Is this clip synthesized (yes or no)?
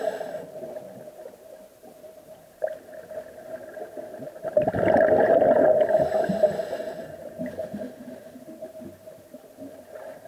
no